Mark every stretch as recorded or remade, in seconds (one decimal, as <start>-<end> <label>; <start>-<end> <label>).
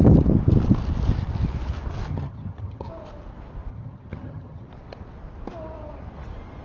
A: 0.0-2.1 recorded; 2.1-2.9 remade; 2.9-3.7 recorded; 3.7-4.7 remade; 4.7-6.6 recorded